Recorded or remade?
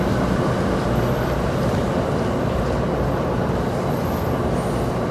recorded